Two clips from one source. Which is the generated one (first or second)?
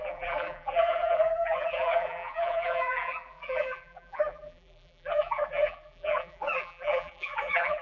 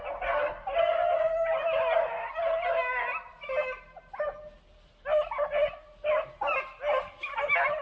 first